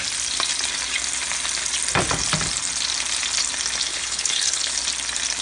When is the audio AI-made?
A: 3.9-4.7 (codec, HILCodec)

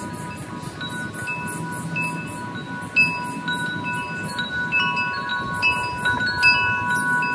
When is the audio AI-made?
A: none

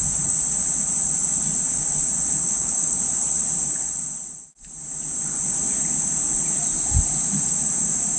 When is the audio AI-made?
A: 2.4-3.0 (codec, HILCodec)

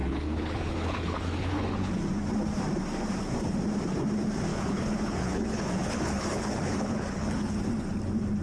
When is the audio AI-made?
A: 0.0-1.9 (codec, HILCodec); 4.5-7.5

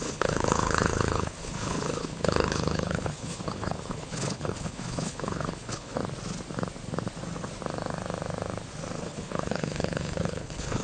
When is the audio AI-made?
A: 0.0-6.0 (codec, HILCodec); 9.0-10.8

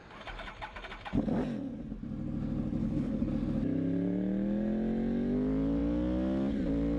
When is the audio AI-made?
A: 2.8-3.3 (codec, HILCodec)

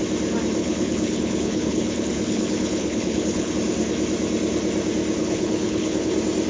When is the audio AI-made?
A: 0.6-3.5 (codec, HILCodec); 5.2-6.1

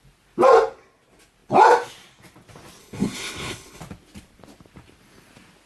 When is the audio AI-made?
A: 2.8-3.8 (codec, HILCodec)